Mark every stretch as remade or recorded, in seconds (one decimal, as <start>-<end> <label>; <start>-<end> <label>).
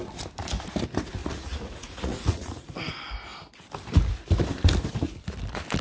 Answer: 0.0-1.2 recorded; 1.2-2.7 remade; 2.7-5.8 recorded